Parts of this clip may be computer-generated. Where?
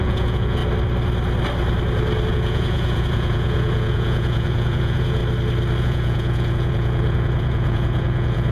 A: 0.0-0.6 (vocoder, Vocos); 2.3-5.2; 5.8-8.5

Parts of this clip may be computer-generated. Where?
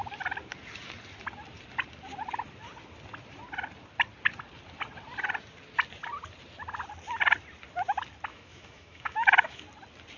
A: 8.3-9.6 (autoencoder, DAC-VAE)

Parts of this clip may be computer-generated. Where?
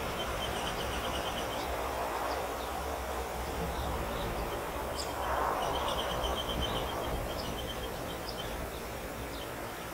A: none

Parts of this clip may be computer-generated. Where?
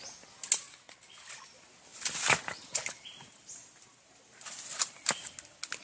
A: none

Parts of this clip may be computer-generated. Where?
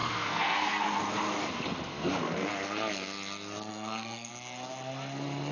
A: 0.0-1.0 (codec, SNAC); 1.9-2.5; 3.7-4.3